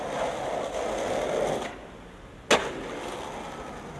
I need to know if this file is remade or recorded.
recorded